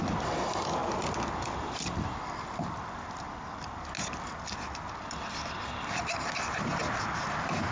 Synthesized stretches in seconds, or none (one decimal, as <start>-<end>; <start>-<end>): none